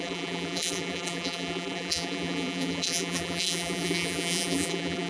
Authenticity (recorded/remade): remade